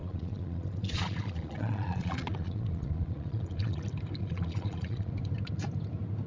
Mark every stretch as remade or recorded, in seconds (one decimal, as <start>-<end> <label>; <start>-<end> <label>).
0.0-3.8 remade; 3.8-4.2 recorded; 4.2-5.1 remade; 5.1-6.3 recorded